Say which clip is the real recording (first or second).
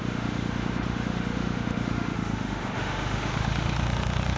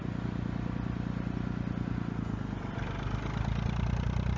second